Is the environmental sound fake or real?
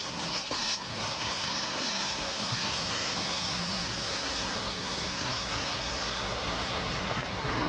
fake